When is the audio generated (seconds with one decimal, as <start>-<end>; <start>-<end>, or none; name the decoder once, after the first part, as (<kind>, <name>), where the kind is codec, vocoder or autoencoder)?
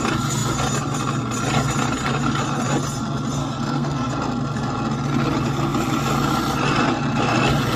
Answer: 3.4-4.1 (codec, SNAC)